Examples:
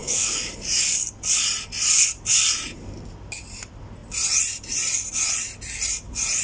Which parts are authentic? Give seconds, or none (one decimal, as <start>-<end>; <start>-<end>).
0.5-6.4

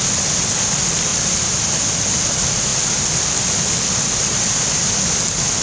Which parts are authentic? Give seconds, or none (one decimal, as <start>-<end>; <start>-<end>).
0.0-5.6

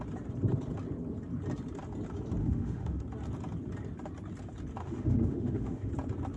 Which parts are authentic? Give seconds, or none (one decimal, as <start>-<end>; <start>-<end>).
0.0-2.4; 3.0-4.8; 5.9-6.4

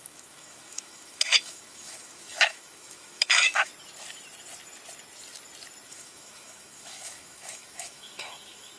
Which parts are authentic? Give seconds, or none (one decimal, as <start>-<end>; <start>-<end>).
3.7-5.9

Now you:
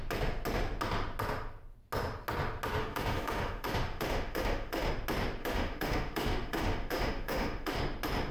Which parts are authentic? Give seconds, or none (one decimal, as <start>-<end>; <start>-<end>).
0.0-2.8; 4.9-5.4; 7.8-8.3

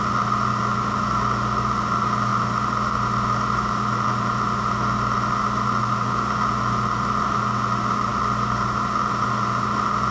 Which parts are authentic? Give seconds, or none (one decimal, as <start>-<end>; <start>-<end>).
0.0-10.1

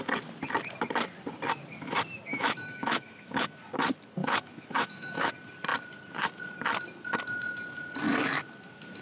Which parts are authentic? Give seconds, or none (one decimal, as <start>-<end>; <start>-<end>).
0.0-2.3; 3.6-4.2; 5.3-9.0

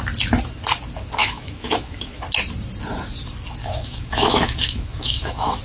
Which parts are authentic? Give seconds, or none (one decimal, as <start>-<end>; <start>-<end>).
0.0-1.2; 2.2-3.6